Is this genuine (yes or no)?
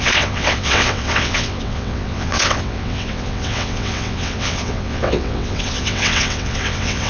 no